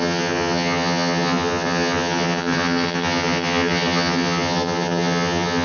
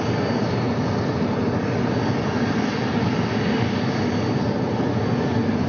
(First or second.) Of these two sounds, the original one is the second